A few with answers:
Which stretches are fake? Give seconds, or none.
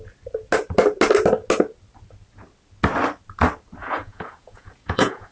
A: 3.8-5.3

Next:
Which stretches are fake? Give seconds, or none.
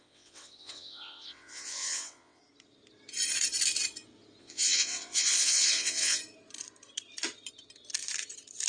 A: 0.0-2.4; 4.4-6.2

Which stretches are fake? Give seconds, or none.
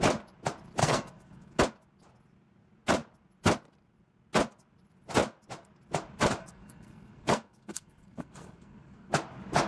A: 0.8-1.6; 6.4-9.1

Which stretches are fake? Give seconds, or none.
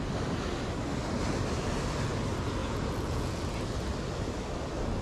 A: 2.6-3.4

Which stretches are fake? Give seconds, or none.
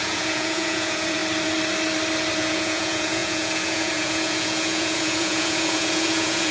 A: 0.0-1.2; 2.4-6.5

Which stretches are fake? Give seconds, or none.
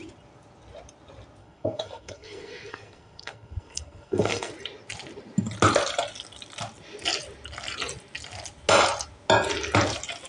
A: 1.4-4.5